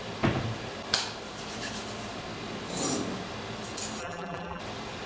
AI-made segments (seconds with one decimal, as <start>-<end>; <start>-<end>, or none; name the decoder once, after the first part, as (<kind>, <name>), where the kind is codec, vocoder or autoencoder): 4.0-4.6 (vocoder, BigVGAN v2)